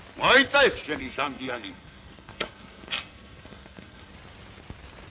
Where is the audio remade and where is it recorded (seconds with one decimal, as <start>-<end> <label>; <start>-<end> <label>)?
0.0-1.0 recorded; 1.0-4.1 remade; 4.1-5.1 recorded